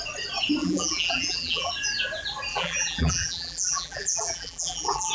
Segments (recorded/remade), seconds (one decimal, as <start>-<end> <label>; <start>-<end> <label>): 0.0-0.6 recorded; 0.6-1.7 remade; 1.7-2.5 recorded; 2.5-5.1 remade